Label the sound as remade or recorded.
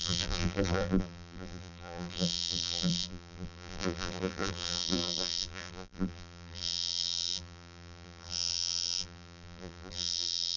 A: remade